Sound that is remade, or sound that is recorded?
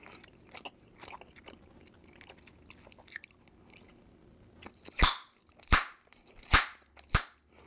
recorded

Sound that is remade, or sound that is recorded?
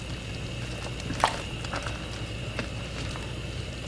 recorded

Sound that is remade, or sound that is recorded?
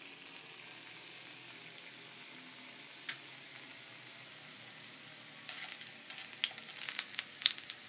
recorded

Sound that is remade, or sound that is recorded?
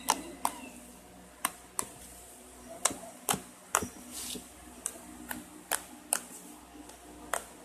recorded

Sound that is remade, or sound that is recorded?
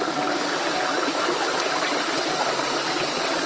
recorded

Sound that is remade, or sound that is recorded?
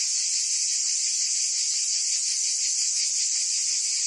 recorded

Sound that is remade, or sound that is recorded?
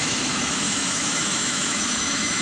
remade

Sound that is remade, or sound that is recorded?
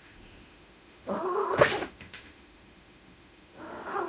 remade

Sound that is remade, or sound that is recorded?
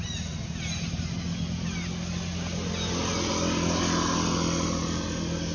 recorded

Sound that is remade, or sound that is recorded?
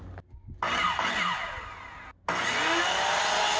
recorded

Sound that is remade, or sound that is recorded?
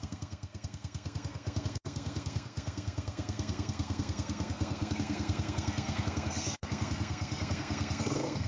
remade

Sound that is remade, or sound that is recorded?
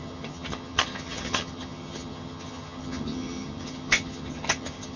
remade